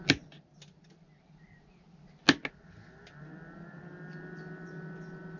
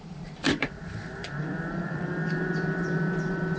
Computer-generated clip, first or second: second